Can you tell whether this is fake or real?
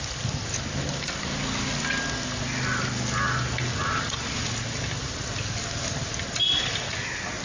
real